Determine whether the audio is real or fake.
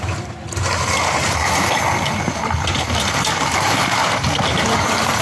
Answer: fake